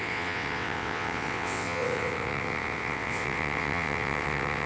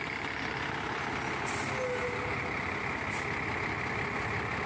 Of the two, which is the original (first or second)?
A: second